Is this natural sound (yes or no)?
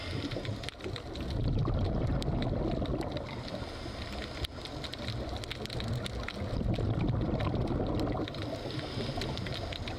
yes